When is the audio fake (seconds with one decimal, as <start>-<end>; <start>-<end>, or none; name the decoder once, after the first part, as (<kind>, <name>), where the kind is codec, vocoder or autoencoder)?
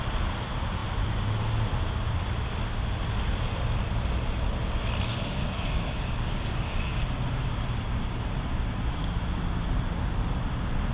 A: 5.1-7.0 (codec, DAC)